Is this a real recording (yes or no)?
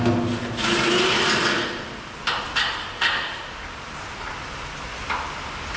yes